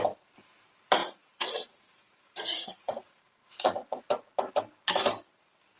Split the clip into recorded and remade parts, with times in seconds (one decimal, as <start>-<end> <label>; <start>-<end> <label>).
0.0-1.0 recorded; 1.0-4.0 remade; 4.0-5.8 recorded